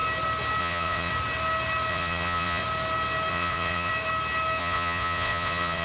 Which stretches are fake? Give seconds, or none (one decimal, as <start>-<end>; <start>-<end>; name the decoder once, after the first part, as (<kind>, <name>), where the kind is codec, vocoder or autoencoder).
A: 0.6-1.1 (vocoder, Vocos); 1.9-2.6; 3.3-3.9; 4.6-5.8